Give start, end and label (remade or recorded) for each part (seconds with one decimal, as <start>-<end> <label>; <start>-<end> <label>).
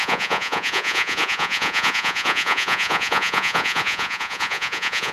0.0-5.1 remade